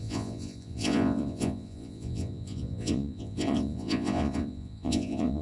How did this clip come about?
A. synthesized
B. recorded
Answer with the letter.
A